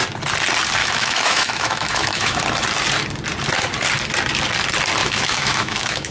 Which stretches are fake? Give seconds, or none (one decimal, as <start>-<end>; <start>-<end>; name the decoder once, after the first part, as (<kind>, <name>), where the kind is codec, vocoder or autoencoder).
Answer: 0.8-2.4 (autoencoder, DAC-VAE); 5.0-6.1